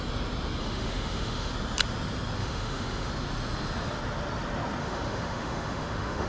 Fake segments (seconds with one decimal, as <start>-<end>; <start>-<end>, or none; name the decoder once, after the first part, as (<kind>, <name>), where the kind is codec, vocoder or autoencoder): 0.6-1.5 (autoencoder, DAC-VAE); 2.4-3.1; 4.8-6.3